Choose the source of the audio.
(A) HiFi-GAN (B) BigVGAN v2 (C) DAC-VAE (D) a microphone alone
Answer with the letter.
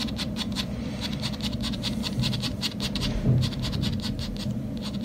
B